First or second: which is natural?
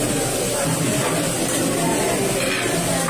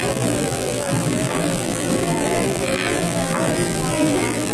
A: first